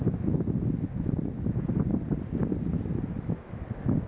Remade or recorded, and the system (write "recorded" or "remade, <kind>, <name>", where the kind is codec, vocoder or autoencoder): recorded